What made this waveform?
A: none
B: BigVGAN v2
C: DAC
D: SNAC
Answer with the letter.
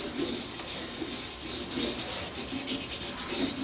A